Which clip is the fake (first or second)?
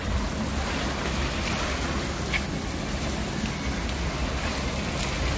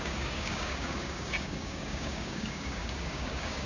second